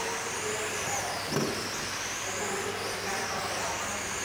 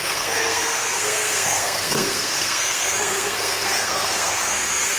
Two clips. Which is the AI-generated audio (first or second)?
second